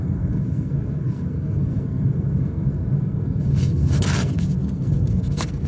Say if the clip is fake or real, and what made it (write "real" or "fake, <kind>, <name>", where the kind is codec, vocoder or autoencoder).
fake, codec, SNAC